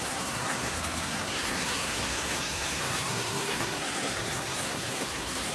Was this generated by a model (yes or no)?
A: yes